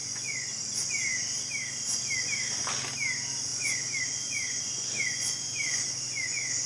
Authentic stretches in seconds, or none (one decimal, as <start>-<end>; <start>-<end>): 0.6-3.5